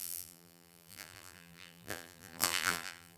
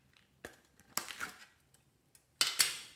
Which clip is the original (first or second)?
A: second